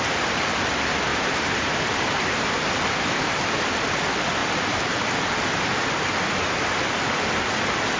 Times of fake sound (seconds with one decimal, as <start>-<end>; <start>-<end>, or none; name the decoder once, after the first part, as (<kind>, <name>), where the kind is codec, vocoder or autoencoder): 1.1-2.5 (vocoder, BigVGAN v2)